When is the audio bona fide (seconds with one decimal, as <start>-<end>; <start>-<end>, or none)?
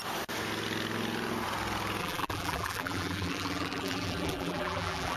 0.0-2.0